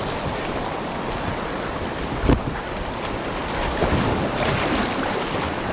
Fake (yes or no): no